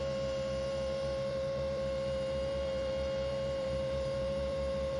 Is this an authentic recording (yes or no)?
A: no